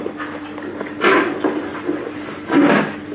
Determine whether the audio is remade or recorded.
recorded